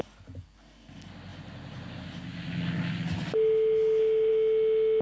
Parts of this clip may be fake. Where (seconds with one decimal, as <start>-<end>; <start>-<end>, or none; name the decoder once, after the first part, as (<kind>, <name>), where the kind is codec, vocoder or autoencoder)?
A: none